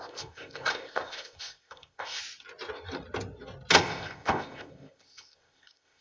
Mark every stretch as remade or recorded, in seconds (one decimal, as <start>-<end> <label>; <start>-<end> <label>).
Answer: 0.0-2.2 remade; 2.2-3.8 recorded; 3.8-6.0 remade